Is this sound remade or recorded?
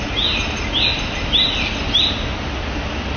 recorded